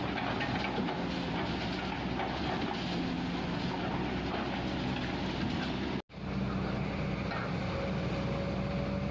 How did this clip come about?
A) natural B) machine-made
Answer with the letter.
A